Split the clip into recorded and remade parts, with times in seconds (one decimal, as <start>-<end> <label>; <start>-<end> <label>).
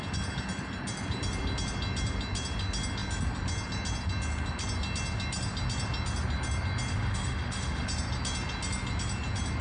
0.0-6.9 recorded; 6.9-7.9 remade; 7.9-9.6 recorded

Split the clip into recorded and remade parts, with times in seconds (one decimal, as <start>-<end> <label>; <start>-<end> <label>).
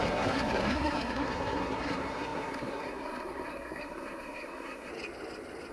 0.0-4.9 remade; 4.9-5.7 recorded